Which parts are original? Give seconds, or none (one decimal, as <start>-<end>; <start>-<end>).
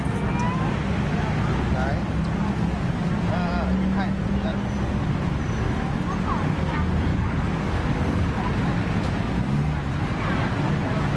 0.0-7.1; 8.3-11.2